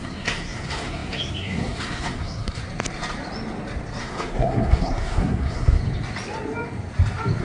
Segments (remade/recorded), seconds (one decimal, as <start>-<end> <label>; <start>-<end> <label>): 0.0-2.6 remade; 2.6-4.0 recorded; 4.0-5.8 remade; 5.8-7.4 recorded